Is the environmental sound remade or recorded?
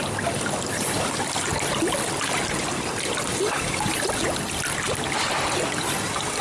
recorded